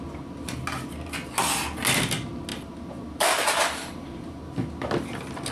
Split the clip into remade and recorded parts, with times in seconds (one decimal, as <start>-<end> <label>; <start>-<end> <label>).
0.0-2.5 recorded; 2.5-4.4 remade; 4.4-5.5 recorded